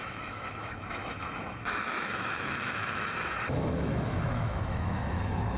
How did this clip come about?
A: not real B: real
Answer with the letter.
A